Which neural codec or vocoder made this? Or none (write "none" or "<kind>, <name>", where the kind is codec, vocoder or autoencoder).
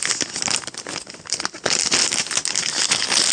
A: none